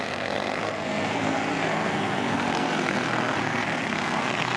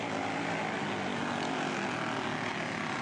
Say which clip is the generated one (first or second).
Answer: first